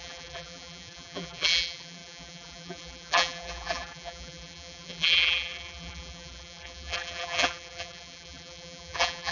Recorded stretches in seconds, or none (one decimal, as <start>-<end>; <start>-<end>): none